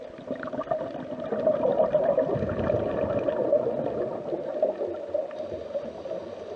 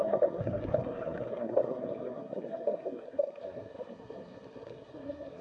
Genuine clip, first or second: first